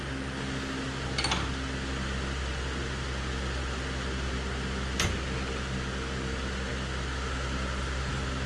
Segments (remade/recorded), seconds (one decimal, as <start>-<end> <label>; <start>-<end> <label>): 0.0-8.5 recorded